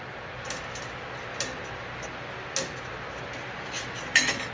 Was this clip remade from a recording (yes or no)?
no